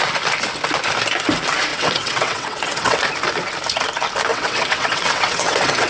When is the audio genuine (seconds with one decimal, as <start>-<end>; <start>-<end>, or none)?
0.0-1.7; 3.0-4.3